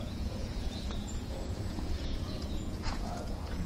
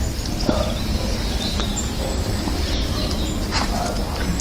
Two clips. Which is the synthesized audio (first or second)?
first